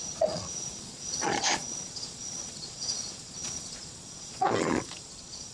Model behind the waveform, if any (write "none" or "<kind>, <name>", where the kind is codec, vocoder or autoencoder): vocoder, Vocos